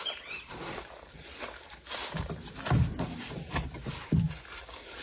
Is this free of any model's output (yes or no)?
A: no